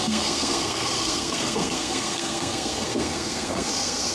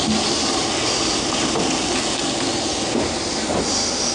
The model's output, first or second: first